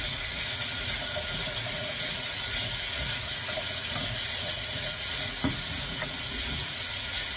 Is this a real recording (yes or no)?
no